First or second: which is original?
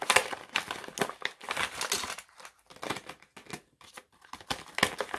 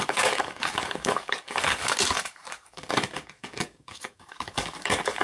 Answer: first